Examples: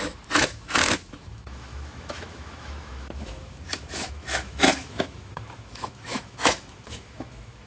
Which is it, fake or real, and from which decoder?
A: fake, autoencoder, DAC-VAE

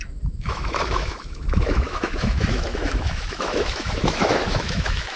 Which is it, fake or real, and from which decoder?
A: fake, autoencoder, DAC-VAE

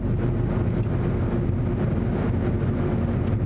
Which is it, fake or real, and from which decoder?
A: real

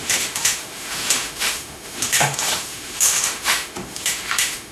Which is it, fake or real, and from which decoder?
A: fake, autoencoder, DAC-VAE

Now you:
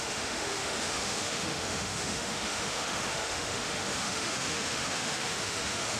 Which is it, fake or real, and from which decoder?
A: fake, autoencoder, DAC-VAE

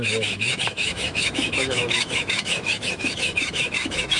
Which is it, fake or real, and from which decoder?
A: fake, autoencoder, DAC-VAE